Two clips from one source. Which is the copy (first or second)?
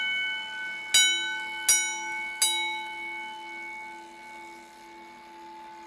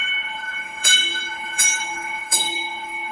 second